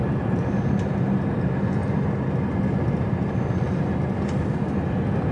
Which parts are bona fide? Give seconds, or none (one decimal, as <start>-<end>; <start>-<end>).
0.0-5.3